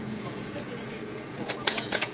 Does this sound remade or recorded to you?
remade